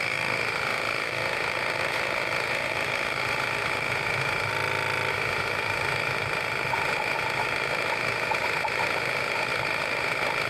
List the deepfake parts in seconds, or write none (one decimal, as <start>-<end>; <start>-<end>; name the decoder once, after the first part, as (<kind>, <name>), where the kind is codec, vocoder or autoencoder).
0.0-4.5 (autoencoder, DAC-VAE); 5.1-10.5

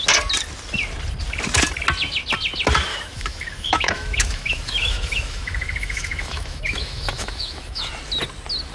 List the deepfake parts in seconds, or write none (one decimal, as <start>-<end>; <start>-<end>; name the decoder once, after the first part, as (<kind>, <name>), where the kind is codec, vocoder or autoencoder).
2.9-7.9 (autoencoder, DAC-VAE)

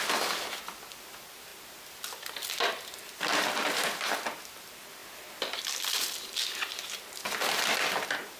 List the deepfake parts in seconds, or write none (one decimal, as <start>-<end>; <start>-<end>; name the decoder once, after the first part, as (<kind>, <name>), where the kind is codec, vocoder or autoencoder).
none